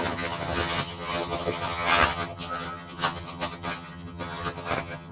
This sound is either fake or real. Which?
fake